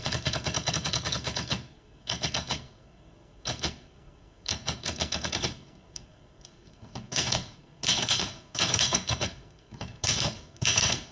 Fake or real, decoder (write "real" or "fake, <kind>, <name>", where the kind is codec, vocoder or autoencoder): fake, codec, SNAC